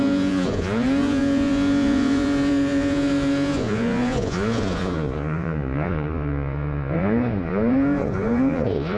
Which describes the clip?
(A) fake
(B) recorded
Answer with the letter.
A